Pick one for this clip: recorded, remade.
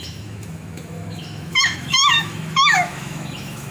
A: remade